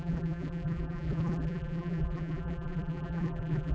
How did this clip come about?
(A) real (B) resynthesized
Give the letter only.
B